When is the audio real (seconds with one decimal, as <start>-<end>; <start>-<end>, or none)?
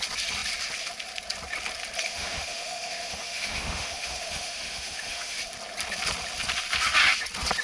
0.0-2.1; 5.4-7.6